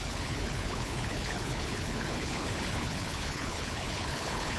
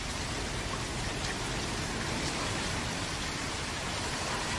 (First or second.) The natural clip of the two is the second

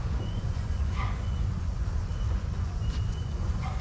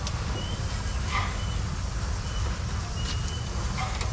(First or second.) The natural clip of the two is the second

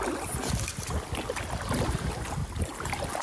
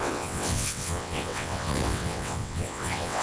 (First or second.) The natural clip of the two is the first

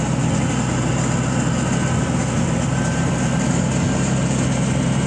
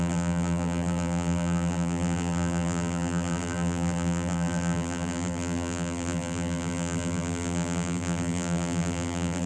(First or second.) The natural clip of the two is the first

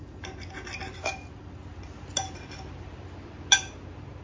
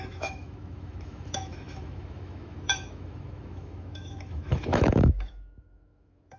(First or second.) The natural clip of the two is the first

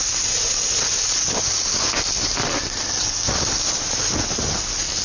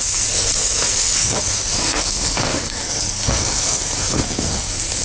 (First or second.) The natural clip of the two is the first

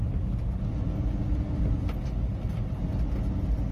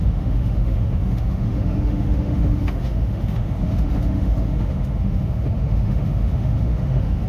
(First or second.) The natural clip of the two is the first